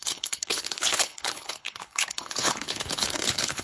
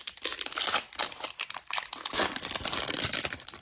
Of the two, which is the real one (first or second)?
second